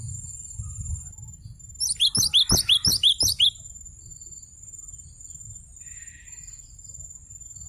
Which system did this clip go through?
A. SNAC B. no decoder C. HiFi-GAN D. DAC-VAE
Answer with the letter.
B